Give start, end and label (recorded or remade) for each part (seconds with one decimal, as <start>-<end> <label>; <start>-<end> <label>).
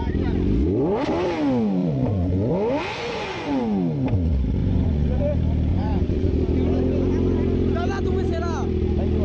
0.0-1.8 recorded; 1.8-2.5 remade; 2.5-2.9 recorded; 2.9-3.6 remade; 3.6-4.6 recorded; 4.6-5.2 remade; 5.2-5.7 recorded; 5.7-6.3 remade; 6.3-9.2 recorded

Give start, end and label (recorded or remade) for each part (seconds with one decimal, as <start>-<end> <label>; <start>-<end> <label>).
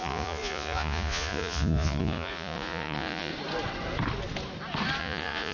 0.0-3.3 remade; 3.3-5.0 recorded; 5.0-5.5 remade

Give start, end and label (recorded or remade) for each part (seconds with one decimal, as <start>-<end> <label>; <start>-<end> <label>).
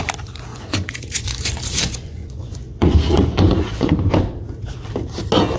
0.0-0.5 recorded; 0.5-3.9 remade; 3.9-5.6 recorded